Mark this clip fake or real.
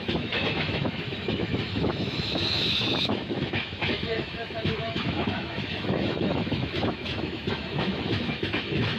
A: fake